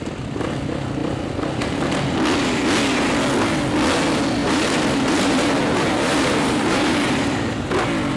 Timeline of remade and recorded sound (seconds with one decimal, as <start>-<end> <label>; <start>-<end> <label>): 0.0-4.4 recorded; 4.4-7.7 remade; 7.7-8.2 recorded